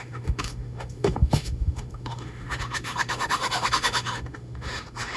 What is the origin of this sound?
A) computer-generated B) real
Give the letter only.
A